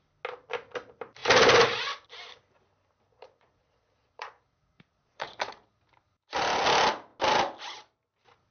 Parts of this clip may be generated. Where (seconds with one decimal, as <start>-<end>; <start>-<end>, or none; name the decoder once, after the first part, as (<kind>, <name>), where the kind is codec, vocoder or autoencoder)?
3.1-5.8 (vocoder, Vocos)

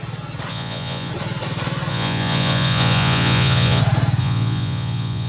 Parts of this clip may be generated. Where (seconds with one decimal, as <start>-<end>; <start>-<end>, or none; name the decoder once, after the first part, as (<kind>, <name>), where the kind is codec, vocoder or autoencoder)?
0.5-1.1 (vocoder, Vocos); 1.9-3.8; 4.2-5.3

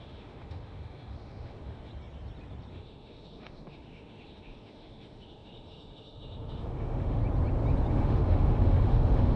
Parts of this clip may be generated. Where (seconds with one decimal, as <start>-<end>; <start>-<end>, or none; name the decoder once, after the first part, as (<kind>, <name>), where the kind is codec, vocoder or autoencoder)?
0.0-1.9 (autoencoder, DAC-VAE); 2.7-7.2; 7.9-9.4

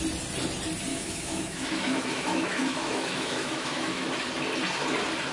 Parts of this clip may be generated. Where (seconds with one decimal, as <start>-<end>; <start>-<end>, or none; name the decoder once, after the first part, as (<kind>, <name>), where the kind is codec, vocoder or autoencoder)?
0.9-4.1 (autoencoder, DAC-VAE)

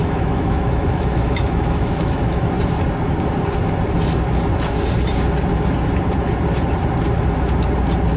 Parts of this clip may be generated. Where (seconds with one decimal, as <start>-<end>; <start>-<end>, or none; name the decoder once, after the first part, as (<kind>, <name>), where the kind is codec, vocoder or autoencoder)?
0.0-2.5 (autoencoder, DAC-VAE)

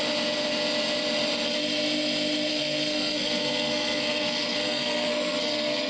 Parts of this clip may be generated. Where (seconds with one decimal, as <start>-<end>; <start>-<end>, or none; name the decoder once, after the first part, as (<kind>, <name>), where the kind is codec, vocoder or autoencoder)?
2.5-5.9 (codec, SNAC)